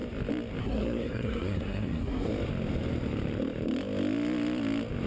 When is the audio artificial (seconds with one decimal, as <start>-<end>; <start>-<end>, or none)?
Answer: 0.6-2.3